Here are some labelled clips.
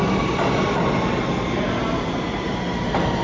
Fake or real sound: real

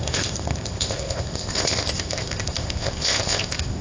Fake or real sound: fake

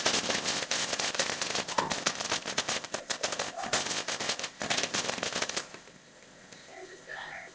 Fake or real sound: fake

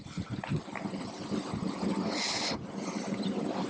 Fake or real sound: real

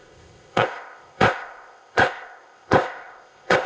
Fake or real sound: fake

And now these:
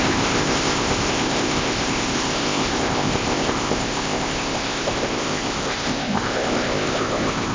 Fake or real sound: fake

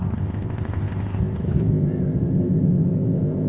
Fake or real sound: fake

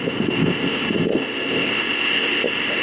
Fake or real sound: fake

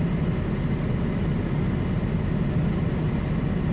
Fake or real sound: real